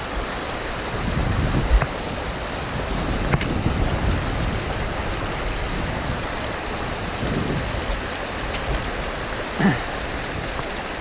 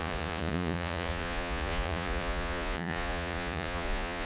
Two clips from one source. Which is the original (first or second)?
first